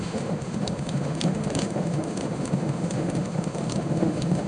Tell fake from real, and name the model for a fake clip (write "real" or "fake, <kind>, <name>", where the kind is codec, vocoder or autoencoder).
fake, autoencoder, DAC-VAE